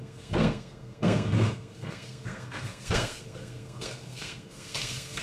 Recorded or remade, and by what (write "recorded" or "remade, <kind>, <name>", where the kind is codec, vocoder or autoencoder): remade, codec, SNAC